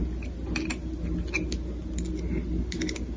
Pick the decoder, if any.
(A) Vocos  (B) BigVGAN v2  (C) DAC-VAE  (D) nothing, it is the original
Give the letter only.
D